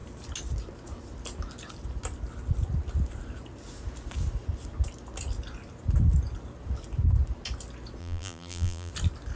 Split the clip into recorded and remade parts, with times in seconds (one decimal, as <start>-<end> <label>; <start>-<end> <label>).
0.0-8.0 recorded; 8.0-8.9 remade; 8.9-9.4 recorded